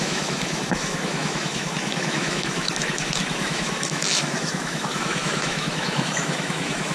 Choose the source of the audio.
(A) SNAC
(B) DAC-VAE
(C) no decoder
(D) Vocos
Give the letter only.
B